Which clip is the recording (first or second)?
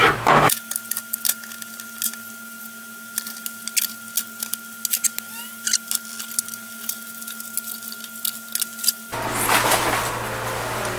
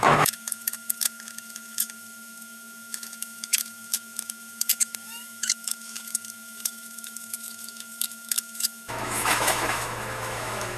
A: first